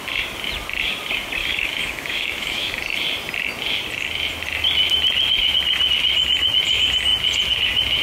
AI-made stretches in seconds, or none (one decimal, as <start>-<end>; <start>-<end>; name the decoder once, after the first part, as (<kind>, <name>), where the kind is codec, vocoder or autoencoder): 1.4-2.7 (autoencoder, DAC-VAE)